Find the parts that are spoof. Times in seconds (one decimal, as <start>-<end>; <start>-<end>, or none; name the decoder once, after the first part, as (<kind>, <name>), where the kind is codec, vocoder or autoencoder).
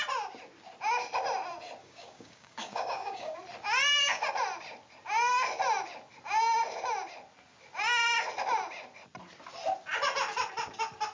1.8-3.4 (codec, DAC)